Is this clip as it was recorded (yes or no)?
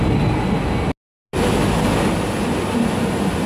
yes